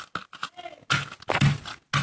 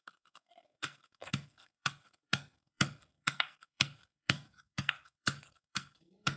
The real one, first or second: first